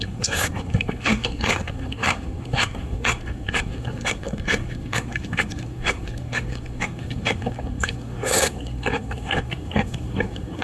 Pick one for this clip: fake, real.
fake